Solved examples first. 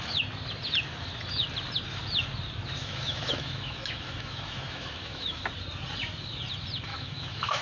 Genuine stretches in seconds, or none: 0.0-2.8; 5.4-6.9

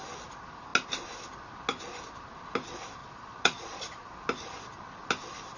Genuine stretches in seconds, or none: 0.0-3.0; 4.1-5.6

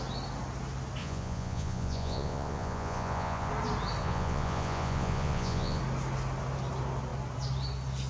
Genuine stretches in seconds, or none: 0.0-1.0; 3.5-4.0; 5.8-8.1